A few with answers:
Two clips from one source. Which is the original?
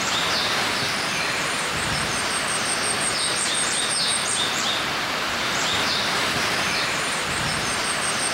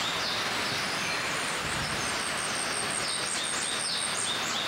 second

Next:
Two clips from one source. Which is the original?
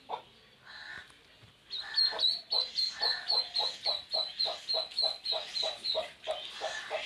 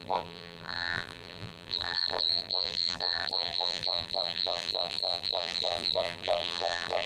first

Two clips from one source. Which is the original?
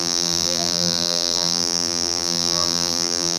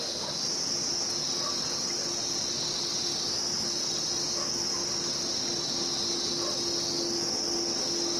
second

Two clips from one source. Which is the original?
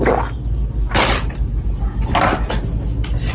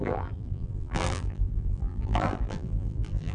first